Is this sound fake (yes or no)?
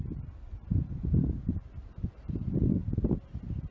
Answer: no